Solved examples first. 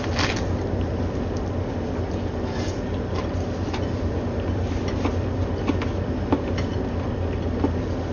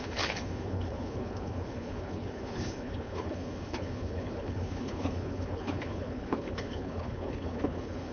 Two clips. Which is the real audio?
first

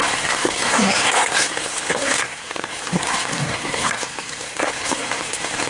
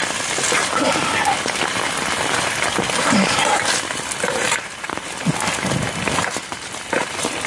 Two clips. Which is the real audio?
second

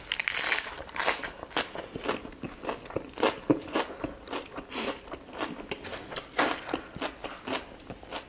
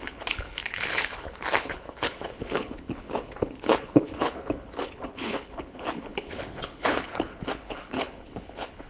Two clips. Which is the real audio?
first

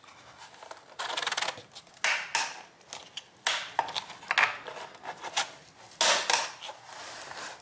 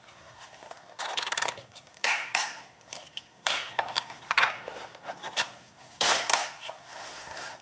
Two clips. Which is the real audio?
first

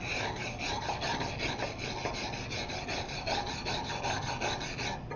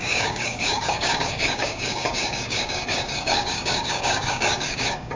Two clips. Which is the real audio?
first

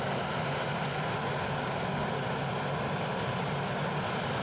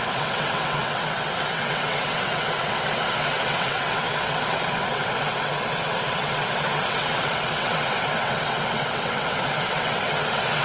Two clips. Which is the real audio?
first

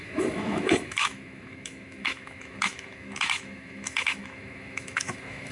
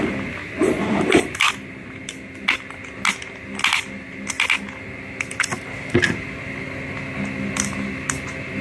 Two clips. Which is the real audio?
second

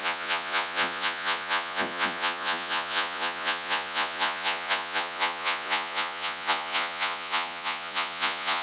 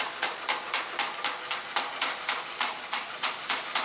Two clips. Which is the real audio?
second